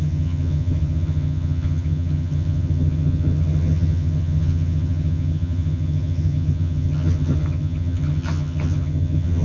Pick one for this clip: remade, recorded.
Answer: remade